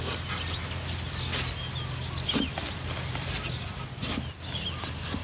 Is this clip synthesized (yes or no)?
no